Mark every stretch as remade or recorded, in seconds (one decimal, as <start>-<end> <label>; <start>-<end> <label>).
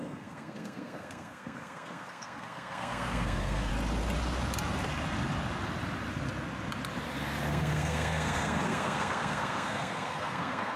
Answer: 0.0-3.7 remade; 3.7-7.5 recorded; 7.5-10.8 remade